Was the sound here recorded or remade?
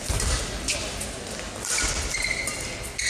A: recorded